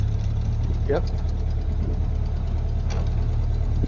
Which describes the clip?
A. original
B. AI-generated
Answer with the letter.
A